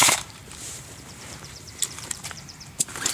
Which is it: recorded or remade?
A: remade